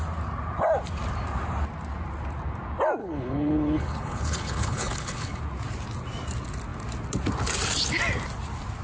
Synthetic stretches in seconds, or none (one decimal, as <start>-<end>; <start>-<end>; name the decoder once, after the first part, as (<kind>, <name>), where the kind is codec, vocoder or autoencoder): 3.0-5.4 (codec, HILCodec)

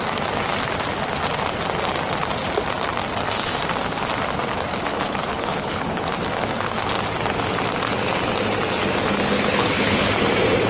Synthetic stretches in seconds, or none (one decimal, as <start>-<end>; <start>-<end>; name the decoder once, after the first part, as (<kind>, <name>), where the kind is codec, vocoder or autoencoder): 4.9-6.1 (codec, HILCodec); 9.2-10.1

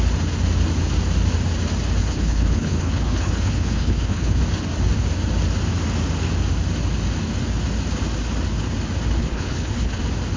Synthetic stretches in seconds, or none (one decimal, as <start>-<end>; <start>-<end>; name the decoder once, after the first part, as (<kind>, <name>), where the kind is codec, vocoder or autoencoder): 2.0-4.4 (codec, HILCodec); 9.2-10.0

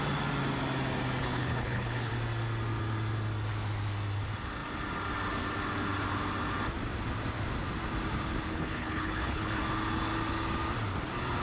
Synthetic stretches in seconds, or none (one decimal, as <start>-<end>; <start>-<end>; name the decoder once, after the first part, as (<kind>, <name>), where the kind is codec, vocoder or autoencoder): 1.2-2.1 (codec, HILCodec); 8.5-9.6

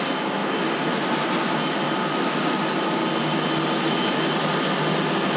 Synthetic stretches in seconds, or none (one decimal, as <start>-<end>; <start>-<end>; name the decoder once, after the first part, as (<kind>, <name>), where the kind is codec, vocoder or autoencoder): none

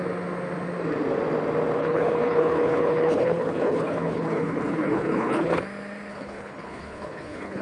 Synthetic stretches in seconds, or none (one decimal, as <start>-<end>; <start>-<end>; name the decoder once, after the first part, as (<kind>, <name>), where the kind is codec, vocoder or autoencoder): 1.8-5.6 (codec, HILCodec); 6.1-7.6

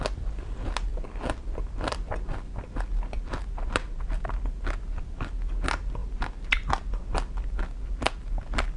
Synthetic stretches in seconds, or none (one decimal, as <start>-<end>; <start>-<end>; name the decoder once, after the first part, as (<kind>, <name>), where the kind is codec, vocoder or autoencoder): none